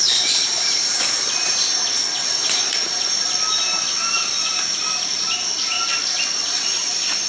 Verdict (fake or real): real